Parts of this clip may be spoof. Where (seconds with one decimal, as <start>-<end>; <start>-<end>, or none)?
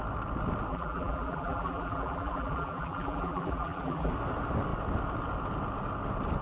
0.7-4.1